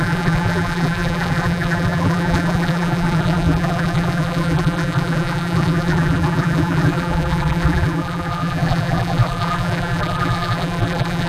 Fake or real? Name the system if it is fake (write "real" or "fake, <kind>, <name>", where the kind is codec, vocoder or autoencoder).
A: fake, vocoder, BigVGAN v2